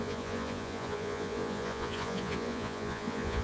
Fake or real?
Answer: fake